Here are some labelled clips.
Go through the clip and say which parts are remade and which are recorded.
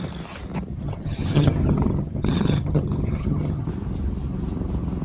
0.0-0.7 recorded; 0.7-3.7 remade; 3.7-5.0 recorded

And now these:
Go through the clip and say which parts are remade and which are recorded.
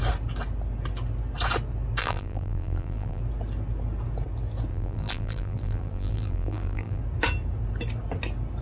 0.0-2.0 recorded; 2.0-3.2 remade; 3.2-4.7 recorded; 4.7-7.0 remade; 7.0-8.6 recorded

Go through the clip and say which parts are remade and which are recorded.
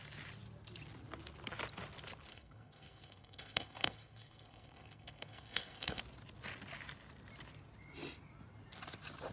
0.0-2.3 recorded; 2.3-6.0 remade; 6.0-9.3 recorded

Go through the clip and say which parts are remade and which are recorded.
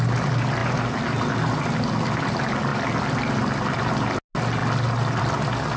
0.0-5.8 recorded